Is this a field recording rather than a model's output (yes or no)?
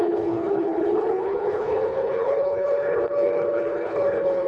no